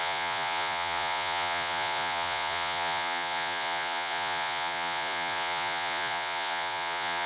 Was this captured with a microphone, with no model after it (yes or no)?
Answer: no